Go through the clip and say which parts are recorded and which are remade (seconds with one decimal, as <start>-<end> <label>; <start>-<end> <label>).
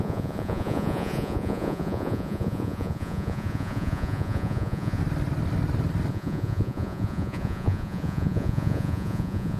0.0-5.0 remade; 5.0-6.1 recorded; 6.1-9.6 remade